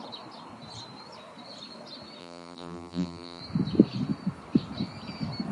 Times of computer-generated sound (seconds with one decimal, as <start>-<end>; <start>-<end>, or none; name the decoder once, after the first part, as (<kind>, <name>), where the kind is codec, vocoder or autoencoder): 2.2-3.4 (vocoder, BigVGAN v2)